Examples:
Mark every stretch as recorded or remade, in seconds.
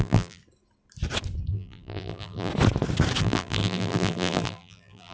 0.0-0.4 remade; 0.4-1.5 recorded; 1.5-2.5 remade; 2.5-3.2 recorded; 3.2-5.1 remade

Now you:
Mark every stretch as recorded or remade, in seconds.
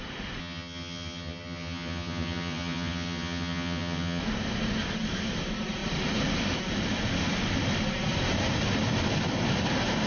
0.0-0.4 recorded; 0.4-4.2 remade; 4.2-10.1 recorded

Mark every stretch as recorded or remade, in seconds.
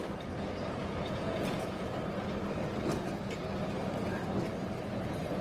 0.0-0.8 recorded; 0.8-1.9 remade; 1.9-5.4 recorded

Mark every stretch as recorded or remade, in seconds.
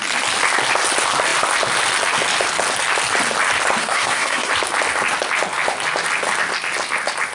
0.0-3.8 recorded; 3.8-4.5 remade; 4.5-7.3 recorded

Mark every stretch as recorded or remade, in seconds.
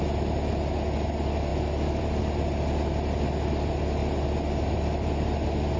0.0-5.8 recorded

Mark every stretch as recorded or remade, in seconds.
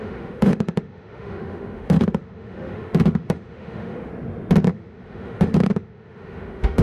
0.0-4.1 remade; 4.1-4.7 recorded; 4.7-6.8 remade